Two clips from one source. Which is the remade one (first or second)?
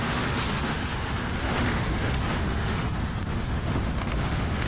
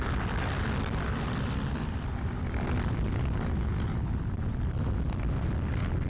first